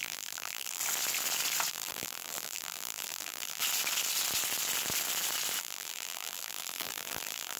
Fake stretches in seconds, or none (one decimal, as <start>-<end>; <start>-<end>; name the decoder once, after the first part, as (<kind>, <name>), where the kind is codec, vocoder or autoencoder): 0.0-0.8 (vocoder, BigVGAN v2); 1.7-3.6; 5.6-7.6